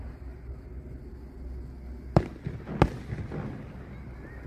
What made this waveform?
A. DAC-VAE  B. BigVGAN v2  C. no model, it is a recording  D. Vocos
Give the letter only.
C